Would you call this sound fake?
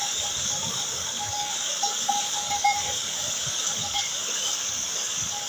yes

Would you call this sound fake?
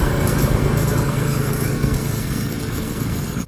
yes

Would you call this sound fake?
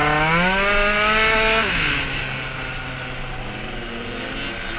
no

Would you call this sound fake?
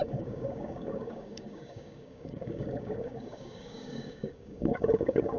yes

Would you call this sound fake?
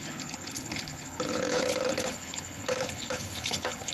yes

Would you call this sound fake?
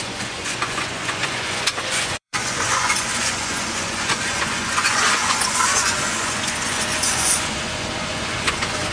yes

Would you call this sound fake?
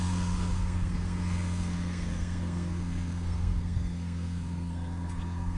yes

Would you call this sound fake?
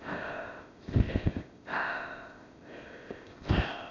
yes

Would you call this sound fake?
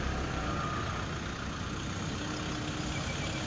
no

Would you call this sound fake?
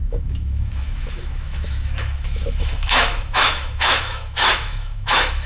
yes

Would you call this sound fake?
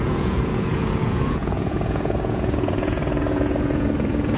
yes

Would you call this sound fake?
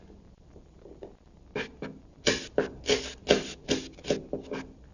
no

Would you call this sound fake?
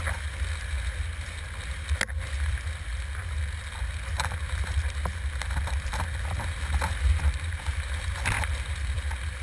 no